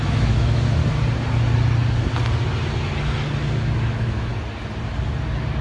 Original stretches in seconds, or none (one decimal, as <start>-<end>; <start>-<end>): 0.8-3.9; 4.3-5.6